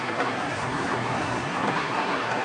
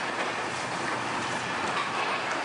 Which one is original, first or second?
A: second